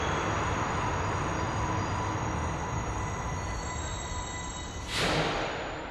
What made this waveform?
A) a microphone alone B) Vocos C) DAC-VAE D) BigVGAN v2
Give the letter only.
A